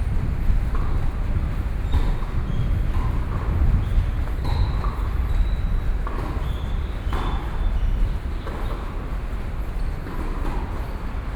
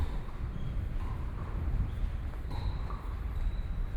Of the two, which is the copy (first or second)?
second